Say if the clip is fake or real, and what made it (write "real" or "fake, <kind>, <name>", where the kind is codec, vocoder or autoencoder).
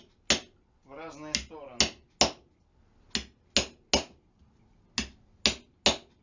real